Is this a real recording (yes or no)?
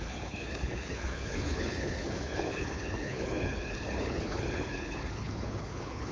no